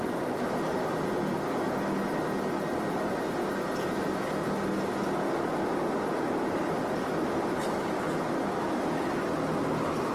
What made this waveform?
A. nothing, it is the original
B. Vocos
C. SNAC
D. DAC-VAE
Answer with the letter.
A